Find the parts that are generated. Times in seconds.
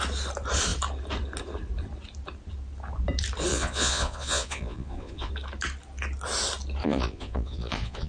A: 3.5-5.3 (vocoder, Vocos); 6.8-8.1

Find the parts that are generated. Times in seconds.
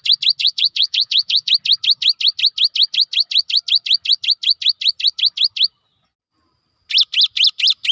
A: 0.4-1.5 (vocoder, Vocos)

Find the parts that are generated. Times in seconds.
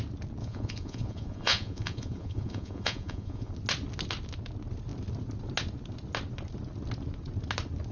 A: 0.4-3.5 (vocoder, Vocos)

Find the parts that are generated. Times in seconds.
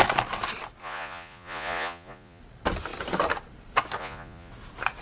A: 0.8-2.4 (vocoder, Vocos); 4.0-4.5